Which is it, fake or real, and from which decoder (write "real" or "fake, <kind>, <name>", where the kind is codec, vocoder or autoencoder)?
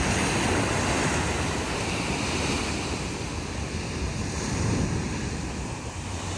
real